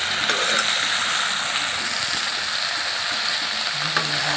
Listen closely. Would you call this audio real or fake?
real